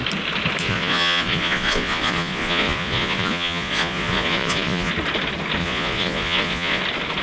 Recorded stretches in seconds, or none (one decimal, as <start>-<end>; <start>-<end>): 0.0-0.6; 4.9-5.6; 6.8-7.2